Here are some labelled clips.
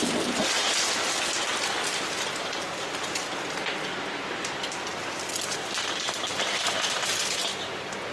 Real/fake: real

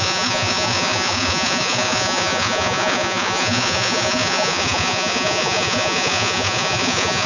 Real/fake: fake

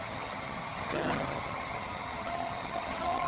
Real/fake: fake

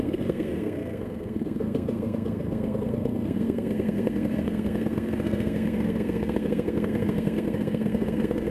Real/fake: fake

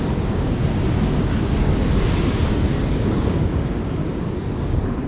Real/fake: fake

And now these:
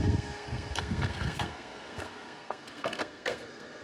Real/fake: fake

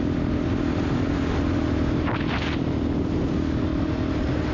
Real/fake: real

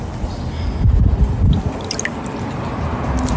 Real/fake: real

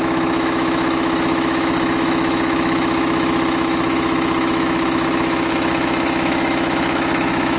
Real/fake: fake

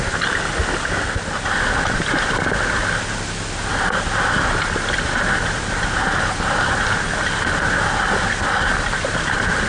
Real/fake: real